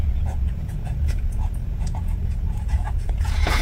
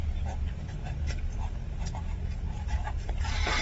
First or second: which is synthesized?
first